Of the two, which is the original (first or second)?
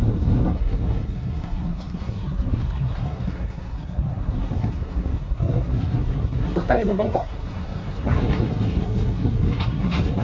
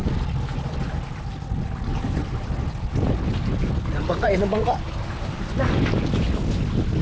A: second